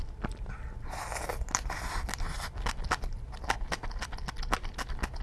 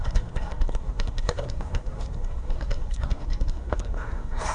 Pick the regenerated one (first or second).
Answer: second